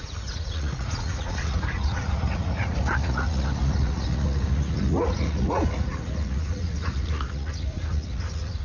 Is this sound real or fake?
fake